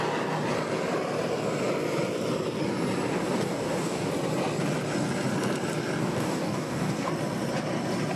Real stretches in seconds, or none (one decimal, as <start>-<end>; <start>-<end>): 0.0-3.1; 4.1-6.0; 7.1-8.2